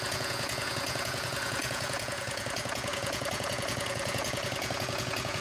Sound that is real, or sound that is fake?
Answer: fake